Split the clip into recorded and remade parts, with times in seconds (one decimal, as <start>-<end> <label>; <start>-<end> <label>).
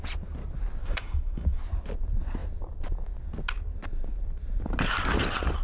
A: 0.0-0.8 recorded; 0.8-1.6 remade; 1.6-5.6 recorded